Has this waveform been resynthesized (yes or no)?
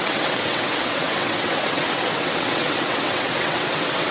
yes